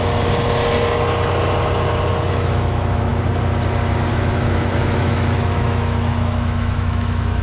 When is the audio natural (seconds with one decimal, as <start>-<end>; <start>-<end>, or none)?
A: 0.0-2.3; 3.1-4.1